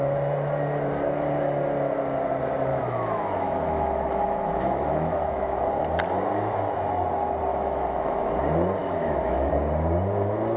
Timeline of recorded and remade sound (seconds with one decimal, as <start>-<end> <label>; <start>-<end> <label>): 0.0-2.7 recorded; 2.7-5.6 remade; 5.6-7.5 recorded; 7.5-8.4 remade; 8.4-8.8 recorded; 8.8-9.5 remade; 9.5-10.6 recorded